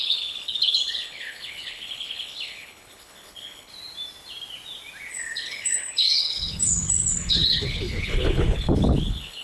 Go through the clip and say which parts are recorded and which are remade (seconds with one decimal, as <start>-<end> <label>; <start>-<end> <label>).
0.0-3.7 remade; 3.7-5.1 recorded; 5.1-9.4 remade